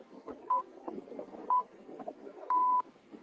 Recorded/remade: remade